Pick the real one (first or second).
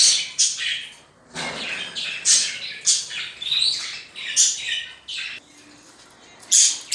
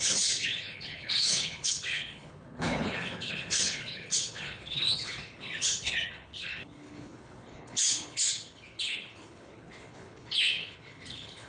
first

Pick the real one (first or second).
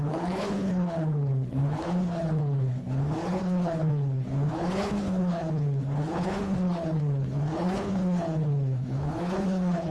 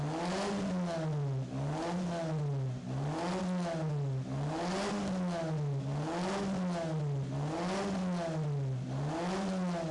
second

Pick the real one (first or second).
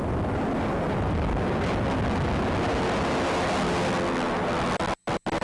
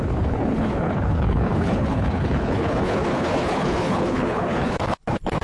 first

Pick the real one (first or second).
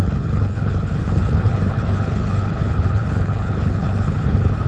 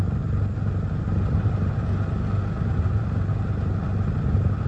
second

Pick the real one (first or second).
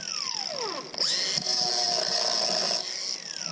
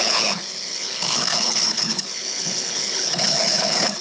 first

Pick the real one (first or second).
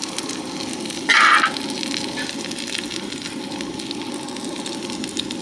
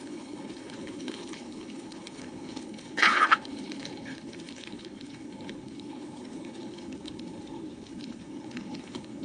first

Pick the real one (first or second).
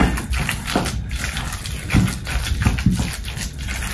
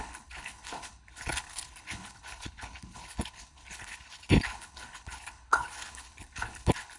first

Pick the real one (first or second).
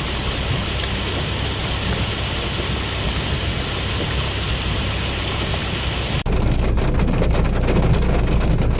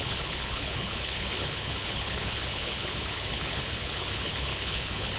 first